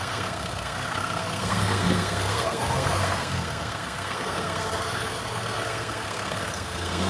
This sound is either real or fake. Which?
fake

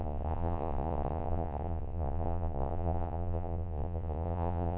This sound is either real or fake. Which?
fake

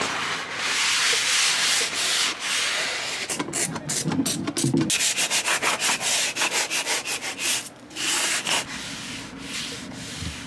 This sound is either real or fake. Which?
real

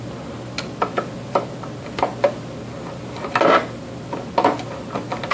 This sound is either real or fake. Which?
real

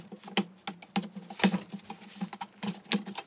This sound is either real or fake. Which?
real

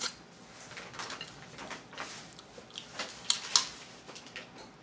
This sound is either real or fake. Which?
real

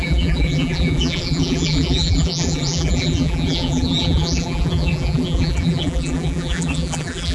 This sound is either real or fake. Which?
fake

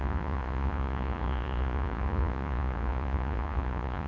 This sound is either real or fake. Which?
fake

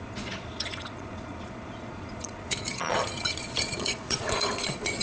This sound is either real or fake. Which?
fake